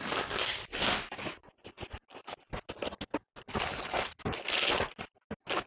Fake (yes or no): no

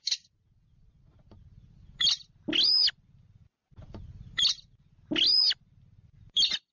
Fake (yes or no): no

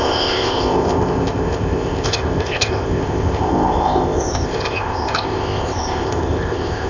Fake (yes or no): yes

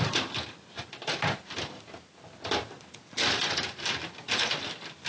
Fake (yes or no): no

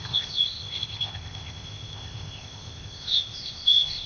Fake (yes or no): yes